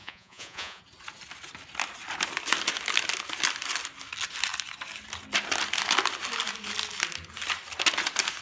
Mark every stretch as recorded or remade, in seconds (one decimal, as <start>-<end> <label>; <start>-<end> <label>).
0.0-0.8 remade; 0.8-8.4 recorded